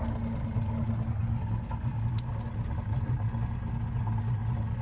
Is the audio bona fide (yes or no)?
yes